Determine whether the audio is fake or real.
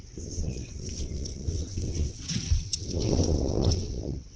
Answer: fake